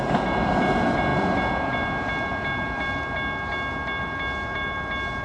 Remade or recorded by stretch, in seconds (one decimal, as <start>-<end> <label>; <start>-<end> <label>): 0.0-5.2 recorded